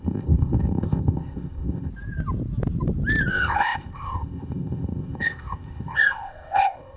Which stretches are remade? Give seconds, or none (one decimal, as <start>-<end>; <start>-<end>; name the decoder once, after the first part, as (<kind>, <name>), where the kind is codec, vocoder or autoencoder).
0.0-1.9 (codec, ZipCodec); 3.3-7.0